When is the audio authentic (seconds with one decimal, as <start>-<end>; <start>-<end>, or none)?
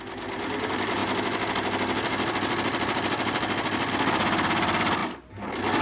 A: 0.0-5.8